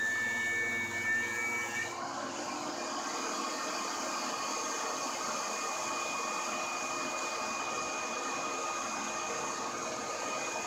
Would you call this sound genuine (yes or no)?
yes